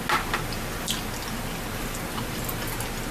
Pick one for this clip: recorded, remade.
recorded